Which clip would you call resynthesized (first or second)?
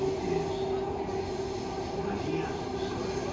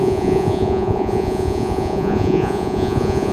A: second